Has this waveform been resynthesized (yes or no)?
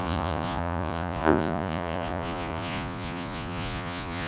yes